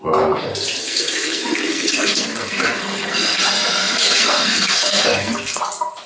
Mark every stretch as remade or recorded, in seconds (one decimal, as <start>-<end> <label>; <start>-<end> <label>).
0.0-0.8 recorded; 0.8-3.4 remade; 3.4-3.8 recorded; 3.8-5.6 remade; 5.6-6.1 recorded